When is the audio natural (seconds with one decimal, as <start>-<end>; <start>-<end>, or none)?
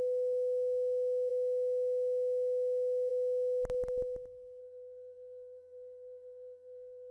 0.0-4.6